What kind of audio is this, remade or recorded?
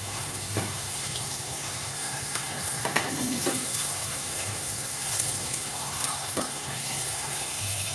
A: remade